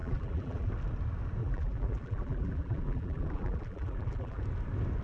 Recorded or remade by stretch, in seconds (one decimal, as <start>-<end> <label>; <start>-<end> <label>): 0.0-0.7 remade; 0.7-1.4 recorded; 1.4-4.4 remade; 4.4-5.0 recorded